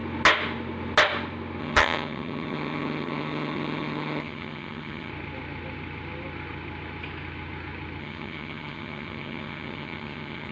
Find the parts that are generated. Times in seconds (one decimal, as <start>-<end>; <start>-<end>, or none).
1.6-5.1; 8.0-10.5